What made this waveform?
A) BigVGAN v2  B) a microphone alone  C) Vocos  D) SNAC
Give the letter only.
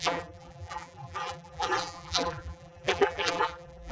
A